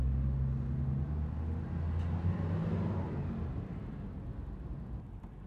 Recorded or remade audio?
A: recorded